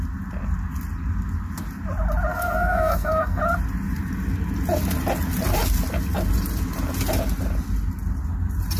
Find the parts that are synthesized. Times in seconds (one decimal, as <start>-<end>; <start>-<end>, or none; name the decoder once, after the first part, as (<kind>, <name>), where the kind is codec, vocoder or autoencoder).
2.3-3.4 (codec, SNAC)